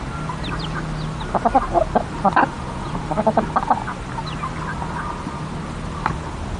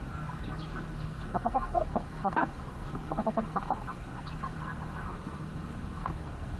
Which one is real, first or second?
first